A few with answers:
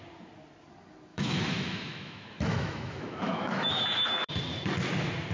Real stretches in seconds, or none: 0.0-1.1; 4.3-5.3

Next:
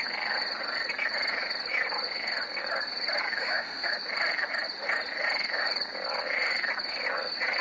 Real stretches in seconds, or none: 0.0-3.4; 3.9-7.6

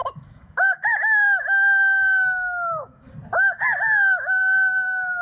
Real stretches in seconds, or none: 3.1-5.2

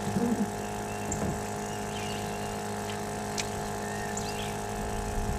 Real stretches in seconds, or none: 0.0-5.4

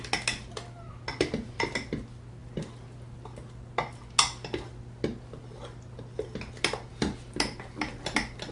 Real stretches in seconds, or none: 0.0-8.5

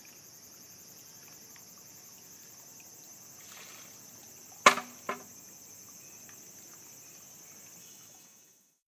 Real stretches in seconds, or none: 0.0-7.8

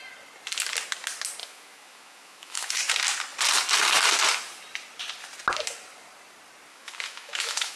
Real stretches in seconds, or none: 0.0-1.4; 2.7-6.7